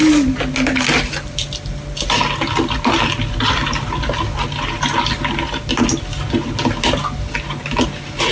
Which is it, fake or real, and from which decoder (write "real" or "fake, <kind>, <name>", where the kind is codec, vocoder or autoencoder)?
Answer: real